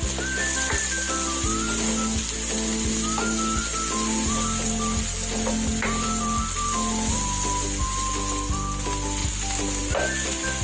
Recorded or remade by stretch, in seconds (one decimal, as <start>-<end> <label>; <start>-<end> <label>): 0.0-10.6 recorded